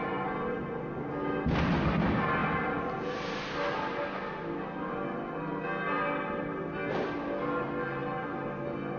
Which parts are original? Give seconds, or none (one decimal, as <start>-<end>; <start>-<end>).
0.0-9.0